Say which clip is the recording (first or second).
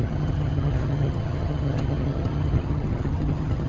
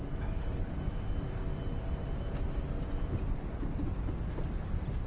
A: second